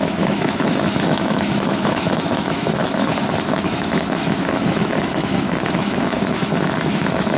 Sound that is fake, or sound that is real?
fake